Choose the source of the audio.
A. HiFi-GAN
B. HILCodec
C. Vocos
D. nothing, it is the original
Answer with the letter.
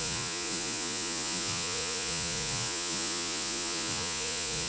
C